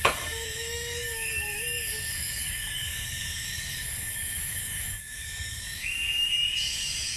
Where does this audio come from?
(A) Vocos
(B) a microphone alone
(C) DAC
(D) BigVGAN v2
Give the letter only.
C